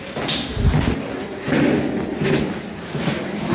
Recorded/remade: recorded